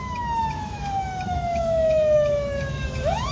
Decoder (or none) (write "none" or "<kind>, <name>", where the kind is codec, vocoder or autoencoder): autoencoder, DAC-VAE